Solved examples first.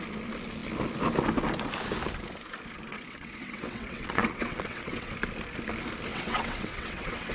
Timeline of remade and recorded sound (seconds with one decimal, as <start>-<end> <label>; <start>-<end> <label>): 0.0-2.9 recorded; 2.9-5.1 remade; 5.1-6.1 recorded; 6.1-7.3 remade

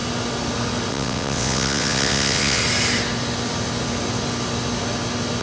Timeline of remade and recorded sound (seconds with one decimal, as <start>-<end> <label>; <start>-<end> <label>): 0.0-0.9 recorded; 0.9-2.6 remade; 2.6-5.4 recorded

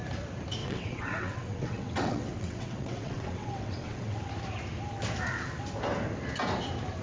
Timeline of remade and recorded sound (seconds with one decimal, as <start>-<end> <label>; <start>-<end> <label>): 0.0-0.6 recorded; 0.6-4.3 remade; 4.3-7.0 recorded

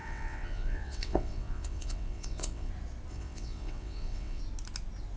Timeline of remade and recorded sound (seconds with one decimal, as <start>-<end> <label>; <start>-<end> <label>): 0.0-2.7 remade; 2.7-3.1 recorded; 3.1-4.4 remade; 4.4-5.2 recorded

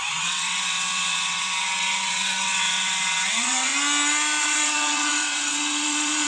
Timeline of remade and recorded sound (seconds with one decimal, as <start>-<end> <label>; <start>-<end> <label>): 0.0-3.7 remade; 3.7-4.4 recorded; 4.4-6.3 remade

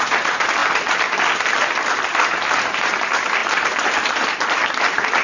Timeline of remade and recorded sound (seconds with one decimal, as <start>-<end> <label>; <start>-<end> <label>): 0.0-5.2 recorded

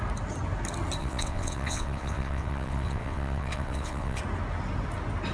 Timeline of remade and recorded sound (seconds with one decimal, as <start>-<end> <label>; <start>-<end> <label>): 0.0-1.0 recorded; 1.0-4.2 remade; 4.2-5.3 recorded